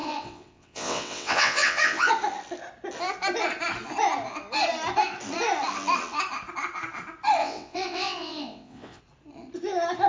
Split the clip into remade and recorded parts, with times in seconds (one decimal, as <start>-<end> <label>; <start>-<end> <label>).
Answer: 0.0-2.1 remade; 2.1-7.4 recorded; 7.4-9.0 remade; 9.0-10.1 recorded